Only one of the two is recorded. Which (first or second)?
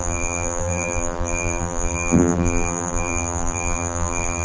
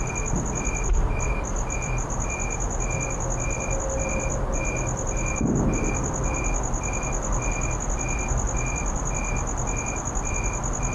second